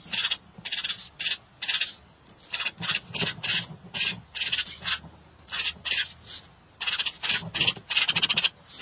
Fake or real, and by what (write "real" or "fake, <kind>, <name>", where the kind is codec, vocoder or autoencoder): real